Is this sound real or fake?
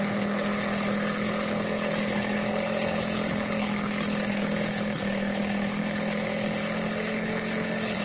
fake